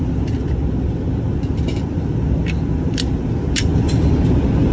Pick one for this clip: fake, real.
real